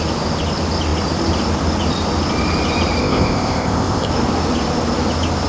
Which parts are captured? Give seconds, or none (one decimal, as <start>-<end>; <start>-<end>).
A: 0.0-3.0; 4.1-5.5